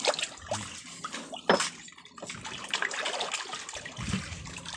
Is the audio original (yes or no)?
yes